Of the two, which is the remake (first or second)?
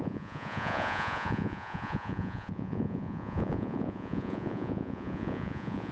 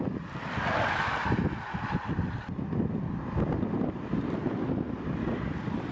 first